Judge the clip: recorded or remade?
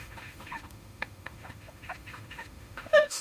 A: remade